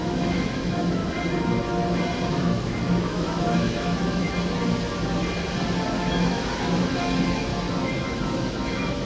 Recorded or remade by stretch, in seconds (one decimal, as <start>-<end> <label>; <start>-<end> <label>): 0.0-1.0 remade; 1.0-2.3 recorded; 2.3-4.2 remade; 4.2-5.9 recorded; 5.9-7.5 remade; 7.5-8.0 recorded; 8.0-9.0 remade